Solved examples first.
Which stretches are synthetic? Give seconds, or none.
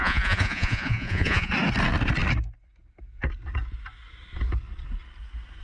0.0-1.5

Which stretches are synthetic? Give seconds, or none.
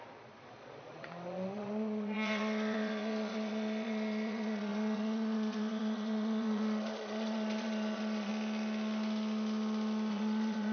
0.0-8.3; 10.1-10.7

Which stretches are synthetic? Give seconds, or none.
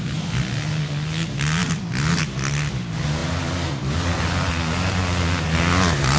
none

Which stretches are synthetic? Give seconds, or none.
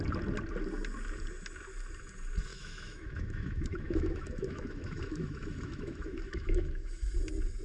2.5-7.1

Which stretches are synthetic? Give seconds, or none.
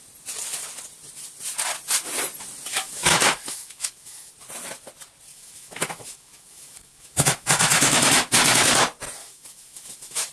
2.7-4.3; 5.3-8.3; 9.2-10.3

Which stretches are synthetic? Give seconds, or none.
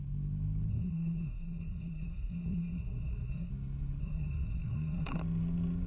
0.7-3.5; 4.0-5.2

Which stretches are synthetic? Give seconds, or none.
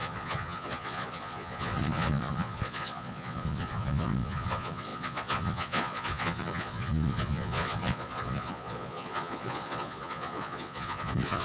0.0-11.4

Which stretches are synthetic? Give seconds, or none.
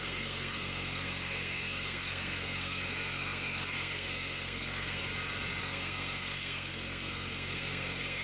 0.0-5.0; 5.6-8.2